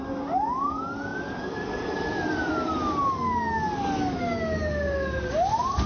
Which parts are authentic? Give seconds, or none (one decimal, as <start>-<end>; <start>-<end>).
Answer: 0.0-1.1; 2.5-5.9